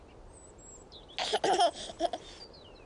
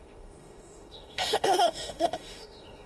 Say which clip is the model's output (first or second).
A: second